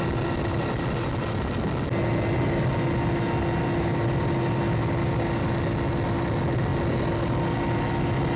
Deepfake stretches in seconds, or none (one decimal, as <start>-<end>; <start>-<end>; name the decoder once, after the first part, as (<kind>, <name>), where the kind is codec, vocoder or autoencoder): none